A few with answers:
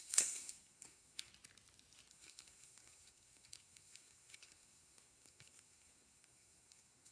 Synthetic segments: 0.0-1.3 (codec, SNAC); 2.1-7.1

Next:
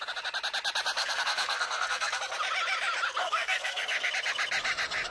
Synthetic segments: 1.0-2.2 (codec, SNAC); 3.2-4.1

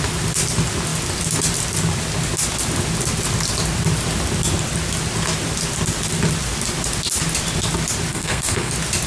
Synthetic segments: 8.1-8.7 (codec, SNAC)

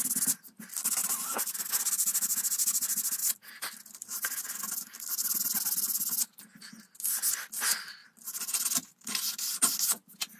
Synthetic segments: none